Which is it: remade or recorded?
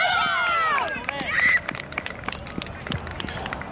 recorded